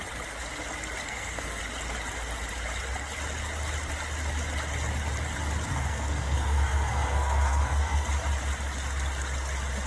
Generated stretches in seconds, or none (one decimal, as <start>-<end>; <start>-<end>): 1.0-1.6; 5.7-8.1